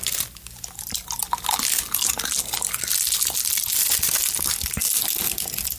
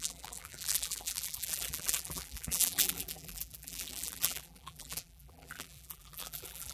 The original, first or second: first